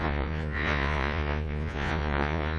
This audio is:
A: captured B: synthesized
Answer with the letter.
B